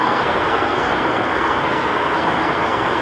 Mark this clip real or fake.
fake